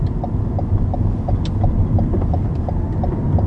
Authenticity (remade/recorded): recorded